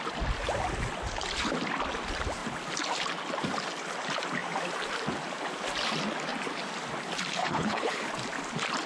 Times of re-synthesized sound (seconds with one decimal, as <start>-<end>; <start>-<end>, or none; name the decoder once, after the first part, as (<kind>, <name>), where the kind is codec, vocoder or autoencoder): 7.4-8.1 (codec, HILCodec)